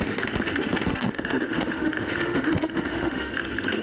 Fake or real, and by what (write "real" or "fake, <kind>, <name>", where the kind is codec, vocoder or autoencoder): fake, autoencoder, DAC-VAE